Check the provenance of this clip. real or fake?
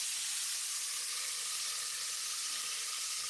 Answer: real